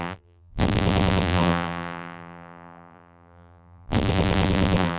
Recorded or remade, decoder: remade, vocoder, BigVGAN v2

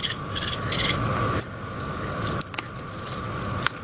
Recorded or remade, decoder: recorded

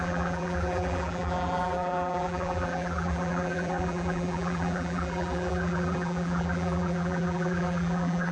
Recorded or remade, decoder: remade, vocoder, BigVGAN v2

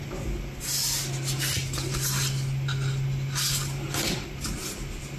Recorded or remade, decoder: recorded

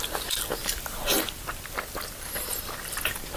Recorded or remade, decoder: recorded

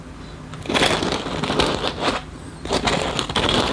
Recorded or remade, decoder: recorded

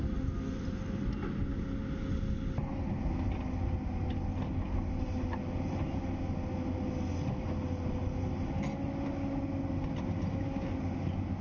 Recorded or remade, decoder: recorded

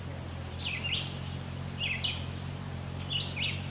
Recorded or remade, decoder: recorded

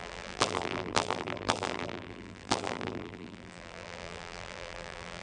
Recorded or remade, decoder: remade, vocoder, BigVGAN v2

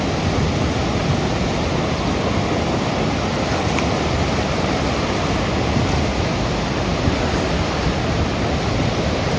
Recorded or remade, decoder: recorded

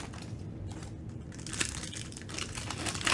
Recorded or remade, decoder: recorded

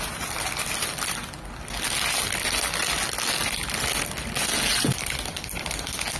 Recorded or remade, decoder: recorded